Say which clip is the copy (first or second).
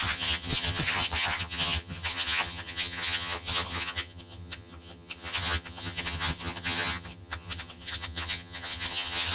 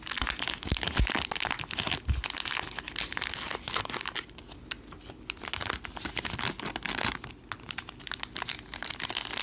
first